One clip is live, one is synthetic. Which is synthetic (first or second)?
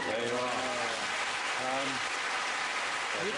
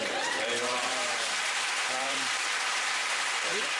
second